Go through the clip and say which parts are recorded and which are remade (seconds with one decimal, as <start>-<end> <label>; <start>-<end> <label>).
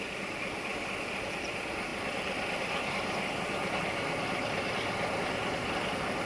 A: 0.0-6.3 recorded